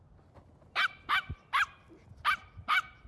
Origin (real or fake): real